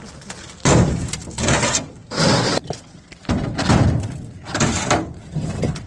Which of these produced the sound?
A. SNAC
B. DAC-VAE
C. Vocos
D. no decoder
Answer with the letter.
D